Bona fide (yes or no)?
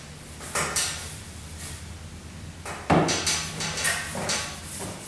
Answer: yes